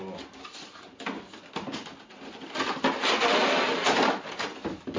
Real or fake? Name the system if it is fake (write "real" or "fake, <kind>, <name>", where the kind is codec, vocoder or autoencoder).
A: real